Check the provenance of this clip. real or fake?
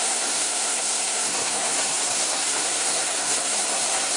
fake